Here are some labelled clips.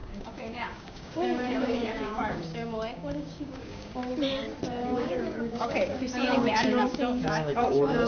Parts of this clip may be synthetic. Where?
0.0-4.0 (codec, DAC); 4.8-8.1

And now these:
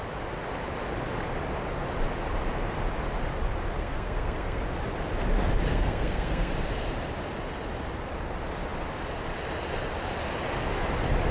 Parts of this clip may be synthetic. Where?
3.8-4.6 (codec, SNAC); 5.7-6.5

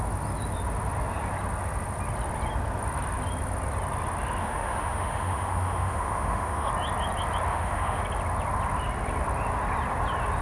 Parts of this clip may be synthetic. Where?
4.4-6.7 (autoencoder, DAC-VAE); 7.5-8.0

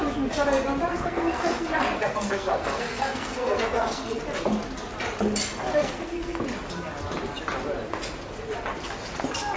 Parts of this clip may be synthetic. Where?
0.9-4.2 (codec, SNAC); 5.8-6.4

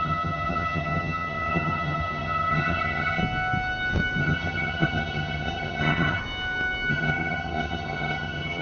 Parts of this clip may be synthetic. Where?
0.0-3.2 (vocoder, HiFi-GAN); 4.2-6.2; 6.9-8.6

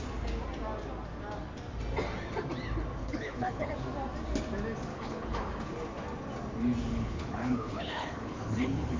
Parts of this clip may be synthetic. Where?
3.0-3.7 (codec, HILCodec); 4.9-5.5; 6.9-9.0

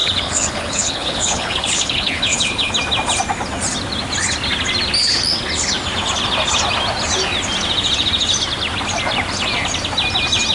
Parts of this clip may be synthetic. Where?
0.0-2.7 (codec, HILCodec)